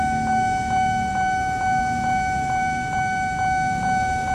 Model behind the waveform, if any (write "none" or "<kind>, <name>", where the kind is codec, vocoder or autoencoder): none